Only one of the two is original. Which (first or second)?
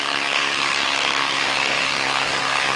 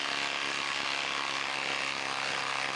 second